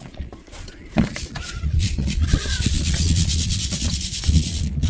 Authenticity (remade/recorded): remade